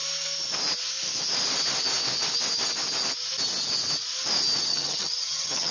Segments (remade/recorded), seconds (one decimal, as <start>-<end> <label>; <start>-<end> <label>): 0.0-4.7 recorded; 4.7-5.7 remade